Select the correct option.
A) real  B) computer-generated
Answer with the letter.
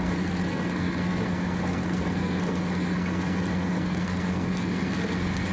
B